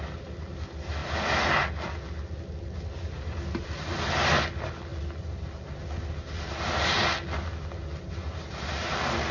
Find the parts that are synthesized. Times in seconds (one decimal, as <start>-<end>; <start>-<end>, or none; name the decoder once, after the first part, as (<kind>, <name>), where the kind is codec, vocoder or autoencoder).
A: none

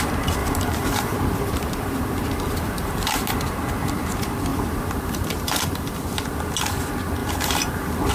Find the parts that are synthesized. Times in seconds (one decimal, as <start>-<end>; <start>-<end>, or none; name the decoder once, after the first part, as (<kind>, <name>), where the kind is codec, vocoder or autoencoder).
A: 0.4-3.4 (vocoder, BigVGAN v2); 4.5-5.9; 7.2-8.1